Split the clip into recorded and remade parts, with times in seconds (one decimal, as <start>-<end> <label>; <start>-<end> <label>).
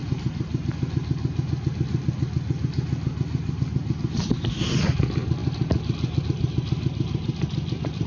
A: 0.0-8.1 recorded